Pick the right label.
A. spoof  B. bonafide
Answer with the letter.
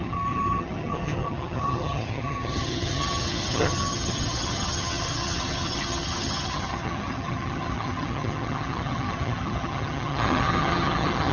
A